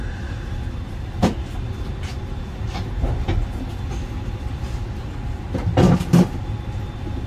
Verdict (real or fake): real